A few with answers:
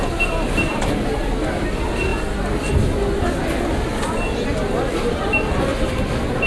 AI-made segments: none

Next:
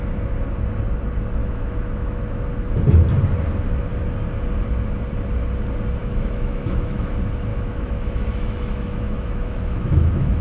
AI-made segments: 1.4-2.5 (autoencoder, DAC-VAE); 6.0-7.1; 7.5-10.4

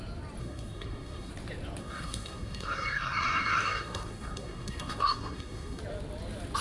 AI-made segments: 0.4-1.3 (codec, SNAC); 1.8-5.8